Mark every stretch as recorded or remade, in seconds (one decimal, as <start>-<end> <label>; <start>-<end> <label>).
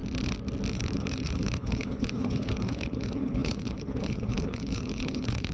0.0-0.7 recorded; 0.7-5.5 remade